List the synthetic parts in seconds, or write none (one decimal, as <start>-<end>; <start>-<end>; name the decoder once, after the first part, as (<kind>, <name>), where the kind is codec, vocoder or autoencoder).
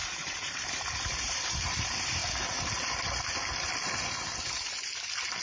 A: 0.0-2.2 (vocoder, BigVGAN v2)